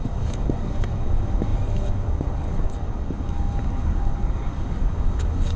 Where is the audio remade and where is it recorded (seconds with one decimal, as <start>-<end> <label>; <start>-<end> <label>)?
0.0-5.6 remade